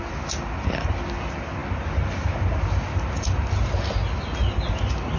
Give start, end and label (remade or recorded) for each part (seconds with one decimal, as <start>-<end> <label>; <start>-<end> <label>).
0.0-5.2 recorded